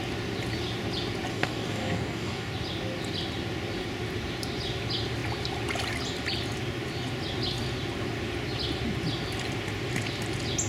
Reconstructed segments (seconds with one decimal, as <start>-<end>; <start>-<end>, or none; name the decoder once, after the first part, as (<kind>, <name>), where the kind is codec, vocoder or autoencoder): 1.3-2.5 (codec, DAC)